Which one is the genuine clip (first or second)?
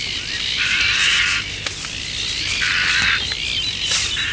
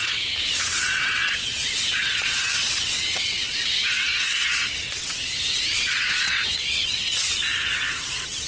first